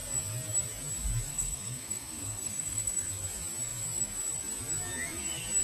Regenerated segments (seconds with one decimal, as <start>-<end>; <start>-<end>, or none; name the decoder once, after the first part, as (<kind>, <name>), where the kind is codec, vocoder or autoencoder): 1.3-3.1 (codec, SNAC)